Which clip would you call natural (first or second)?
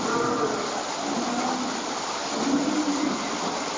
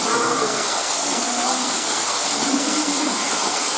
first